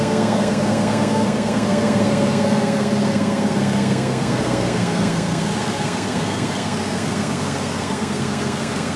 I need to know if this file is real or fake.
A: fake